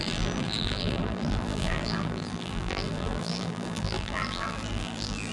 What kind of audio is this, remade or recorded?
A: remade